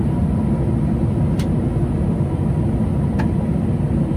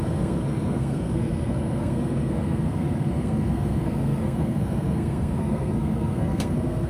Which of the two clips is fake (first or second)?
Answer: second